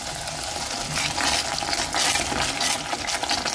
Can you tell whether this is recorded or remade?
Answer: recorded